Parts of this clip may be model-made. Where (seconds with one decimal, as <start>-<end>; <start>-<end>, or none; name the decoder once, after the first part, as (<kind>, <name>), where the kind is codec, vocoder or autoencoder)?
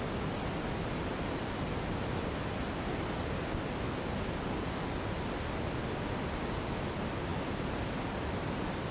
none